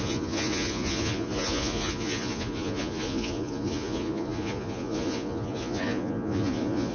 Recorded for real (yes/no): no